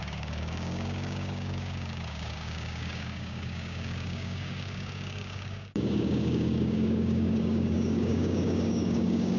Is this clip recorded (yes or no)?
no